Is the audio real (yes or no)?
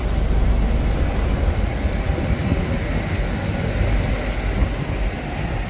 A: yes